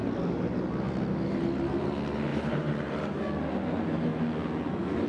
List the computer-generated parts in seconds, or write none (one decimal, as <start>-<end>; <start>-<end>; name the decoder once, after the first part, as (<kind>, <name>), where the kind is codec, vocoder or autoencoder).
2.3-3.2 (vocoder, BigVGAN v2)